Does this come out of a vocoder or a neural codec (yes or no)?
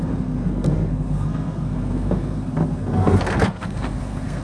yes